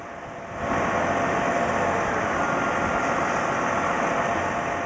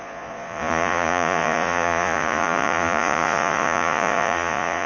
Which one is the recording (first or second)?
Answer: first